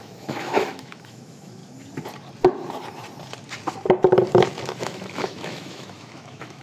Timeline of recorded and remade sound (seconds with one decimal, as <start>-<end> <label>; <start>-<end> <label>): 0.0-1.6 remade; 1.6-4.8 recorded; 4.8-6.6 remade